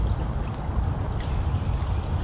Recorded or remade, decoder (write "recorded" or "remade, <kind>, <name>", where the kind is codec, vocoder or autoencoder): recorded